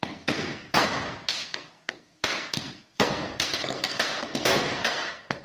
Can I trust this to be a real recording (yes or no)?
no